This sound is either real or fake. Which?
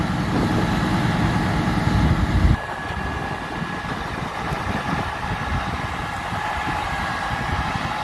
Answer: real